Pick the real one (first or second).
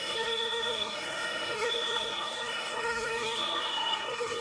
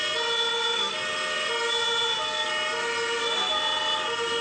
second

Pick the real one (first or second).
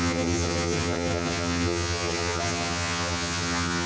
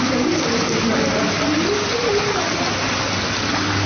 second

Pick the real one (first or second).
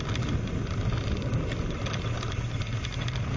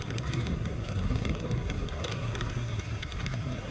first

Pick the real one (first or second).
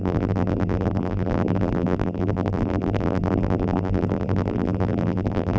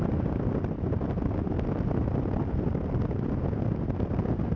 second